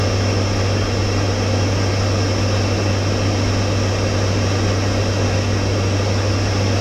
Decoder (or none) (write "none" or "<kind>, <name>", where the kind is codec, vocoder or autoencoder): none